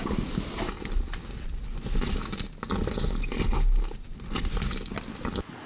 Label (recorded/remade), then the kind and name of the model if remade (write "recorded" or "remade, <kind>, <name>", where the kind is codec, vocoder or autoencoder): recorded